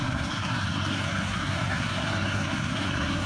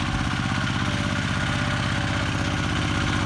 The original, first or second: second